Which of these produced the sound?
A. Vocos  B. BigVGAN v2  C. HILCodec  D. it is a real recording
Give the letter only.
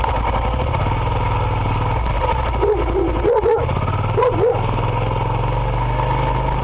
D